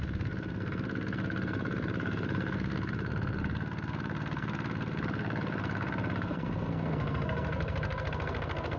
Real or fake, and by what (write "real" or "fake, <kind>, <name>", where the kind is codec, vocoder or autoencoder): fake, codec, SNAC